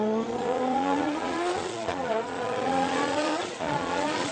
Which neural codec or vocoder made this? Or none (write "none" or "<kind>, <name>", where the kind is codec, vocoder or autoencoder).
vocoder, Vocos